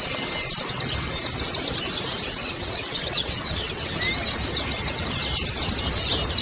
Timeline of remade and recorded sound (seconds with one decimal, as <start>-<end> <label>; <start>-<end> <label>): 0.0-2.3 recorded; 2.3-3.9 remade; 3.9-6.4 recorded